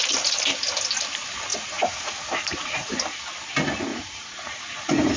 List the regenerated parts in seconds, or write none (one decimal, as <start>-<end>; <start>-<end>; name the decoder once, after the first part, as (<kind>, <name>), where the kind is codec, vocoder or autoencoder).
1.5-2.9 (vocoder, Vocos); 3.9-5.2